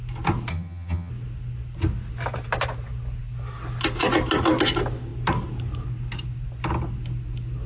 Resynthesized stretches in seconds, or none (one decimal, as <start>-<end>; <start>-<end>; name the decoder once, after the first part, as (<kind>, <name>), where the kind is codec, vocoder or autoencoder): 0.5-1.1 (vocoder, HiFi-GAN)